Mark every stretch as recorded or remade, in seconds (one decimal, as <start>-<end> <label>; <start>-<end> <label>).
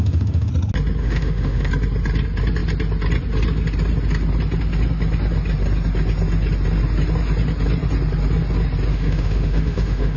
0.0-0.5 remade; 0.5-1.0 recorded; 1.0-1.7 remade; 1.7-8.9 recorded; 8.9-10.2 remade